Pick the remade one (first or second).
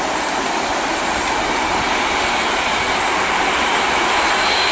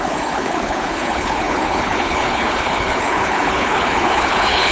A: second